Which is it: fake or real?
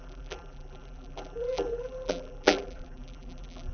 fake